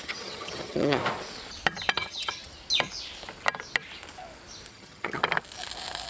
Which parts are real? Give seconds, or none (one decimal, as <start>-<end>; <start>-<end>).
1.0-1.9; 2.4-4.7; 5.2-6.1